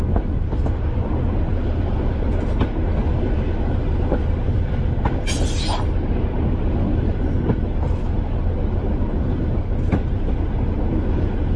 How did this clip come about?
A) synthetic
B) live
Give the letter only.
B